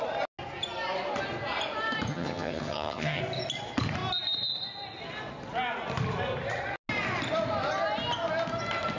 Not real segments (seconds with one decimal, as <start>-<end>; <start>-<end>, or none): 2.1-3.2